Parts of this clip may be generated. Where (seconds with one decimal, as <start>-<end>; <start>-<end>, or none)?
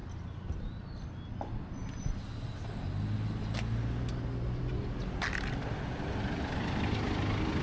0.0-0.6